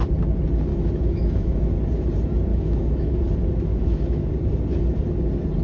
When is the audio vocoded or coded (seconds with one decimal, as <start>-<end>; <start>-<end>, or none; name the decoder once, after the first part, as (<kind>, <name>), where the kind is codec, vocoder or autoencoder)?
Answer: 0.7-1.6 (autoencoder, DAC-VAE); 2.5-3.2; 3.7-4.3